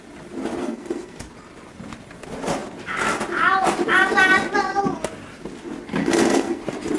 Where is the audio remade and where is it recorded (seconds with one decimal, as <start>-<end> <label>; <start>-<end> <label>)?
0.0-0.6 recorded; 0.6-1.2 remade; 1.2-6.0 recorded; 6.0-6.6 remade; 6.6-7.0 recorded